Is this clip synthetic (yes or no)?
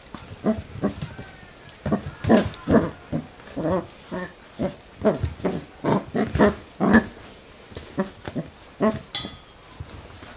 no